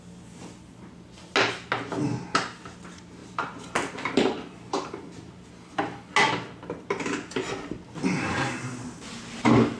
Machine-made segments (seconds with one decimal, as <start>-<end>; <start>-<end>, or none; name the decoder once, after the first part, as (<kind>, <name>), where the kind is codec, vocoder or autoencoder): 3.2-5.5 (vocoder, BigVGAN v2)